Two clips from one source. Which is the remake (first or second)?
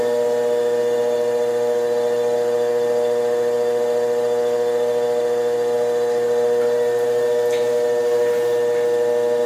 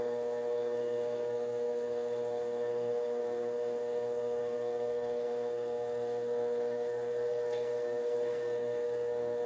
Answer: second